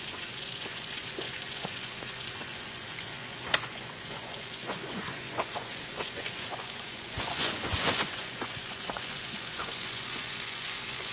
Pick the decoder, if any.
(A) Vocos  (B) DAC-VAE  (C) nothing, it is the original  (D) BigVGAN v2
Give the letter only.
A